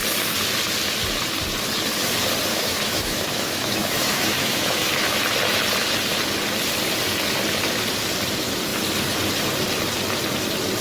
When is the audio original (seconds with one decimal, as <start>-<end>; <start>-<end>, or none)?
0.0-2.5; 5.1-10.8